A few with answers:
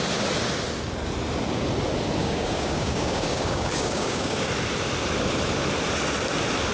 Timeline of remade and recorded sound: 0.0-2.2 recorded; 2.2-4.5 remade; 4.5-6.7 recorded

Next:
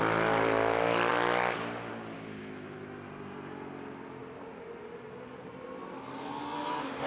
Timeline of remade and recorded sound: 0.0-7.1 recorded